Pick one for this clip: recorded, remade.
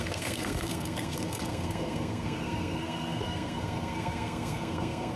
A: remade